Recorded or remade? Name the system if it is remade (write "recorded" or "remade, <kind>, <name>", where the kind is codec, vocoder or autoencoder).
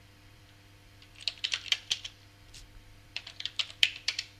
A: remade, vocoder, BigVGAN v2